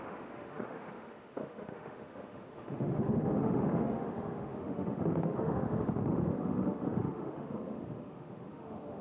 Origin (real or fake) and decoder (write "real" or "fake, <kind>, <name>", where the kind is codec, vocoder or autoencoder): fake, autoencoder, DAC-VAE